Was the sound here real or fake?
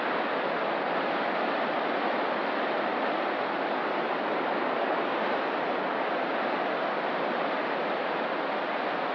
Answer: real